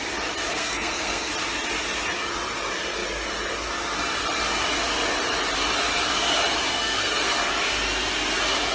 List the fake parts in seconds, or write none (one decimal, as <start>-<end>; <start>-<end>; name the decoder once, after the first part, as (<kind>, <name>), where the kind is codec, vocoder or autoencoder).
0.5-1.3 (codec, SNAC); 6.7-7.3